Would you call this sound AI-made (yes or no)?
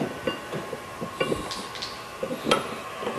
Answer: no